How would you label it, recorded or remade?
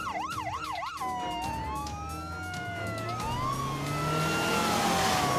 recorded